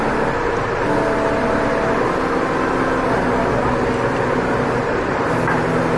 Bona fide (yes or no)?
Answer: yes